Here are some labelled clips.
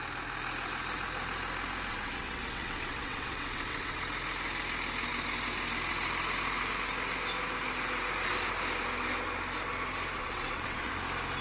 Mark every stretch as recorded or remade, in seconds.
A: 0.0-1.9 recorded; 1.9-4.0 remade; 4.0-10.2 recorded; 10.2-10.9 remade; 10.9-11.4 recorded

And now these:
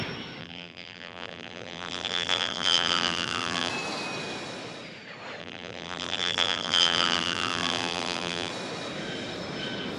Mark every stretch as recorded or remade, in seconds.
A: 0.0-0.4 recorded; 0.4-3.7 remade; 3.7-5.4 recorded; 5.4-8.5 remade; 8.5-10.0 recorded

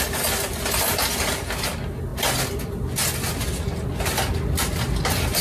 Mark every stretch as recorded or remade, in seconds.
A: 0.0-5.4 recorded

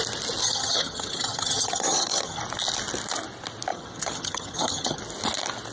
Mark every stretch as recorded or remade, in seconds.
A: 0.0-0.4 recorded; 0.4-2.4 remade; 2.4-3.7 recorded; 3.7-5.0 remade; 5.0-5.7 recorded

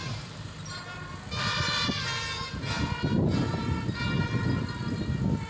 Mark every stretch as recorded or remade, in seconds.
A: 0.0-2.0 remade; 2.0-5.5 recorded

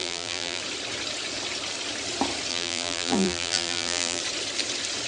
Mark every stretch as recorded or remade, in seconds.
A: 0.0-0.6 remade; 0.6-2.5 recorded; 2.5-4.2 remade; 4.2-5.1 recorded

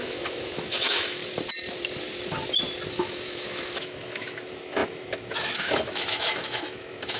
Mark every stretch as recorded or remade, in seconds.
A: 0.0-1.2 remade; 1.2-2.9 recorded; 2.9-7.2 remade